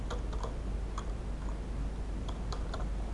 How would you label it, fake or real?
real